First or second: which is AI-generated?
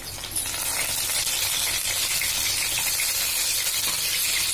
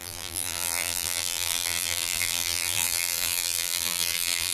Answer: second